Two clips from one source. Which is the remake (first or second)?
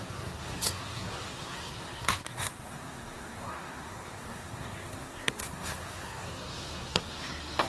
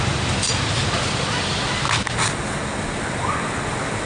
first